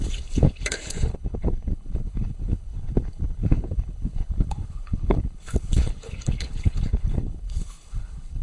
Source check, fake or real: fake